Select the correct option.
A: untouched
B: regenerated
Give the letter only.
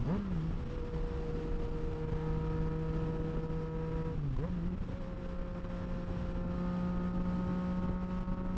A